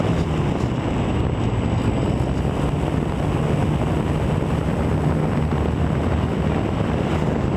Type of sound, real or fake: real